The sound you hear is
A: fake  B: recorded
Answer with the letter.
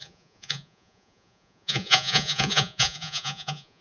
A